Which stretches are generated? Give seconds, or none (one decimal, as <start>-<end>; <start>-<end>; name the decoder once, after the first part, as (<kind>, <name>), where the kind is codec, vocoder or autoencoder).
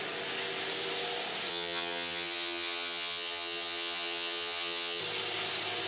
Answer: 1.5-5.0 (vocoder, HiFi-GAN)